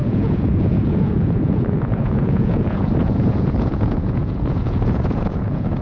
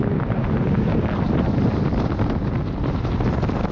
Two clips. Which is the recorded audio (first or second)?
second